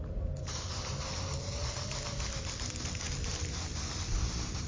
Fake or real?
real